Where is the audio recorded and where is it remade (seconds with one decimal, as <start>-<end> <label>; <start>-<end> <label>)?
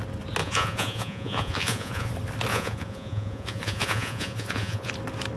0.0-0.4 recorded; 0.4-2.1 remade; 2.1-2.5 recorded; 2.5-4.9 remade; 4.9-5.4 recorded